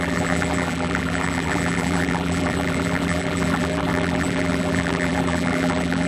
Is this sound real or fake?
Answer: fake